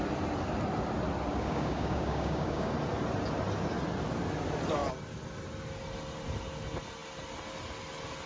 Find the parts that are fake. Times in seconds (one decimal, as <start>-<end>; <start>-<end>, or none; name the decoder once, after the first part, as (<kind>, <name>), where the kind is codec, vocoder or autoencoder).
1.3-2.7 (codec, DAC)